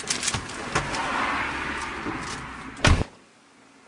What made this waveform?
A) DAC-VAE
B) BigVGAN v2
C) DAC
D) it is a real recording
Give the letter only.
D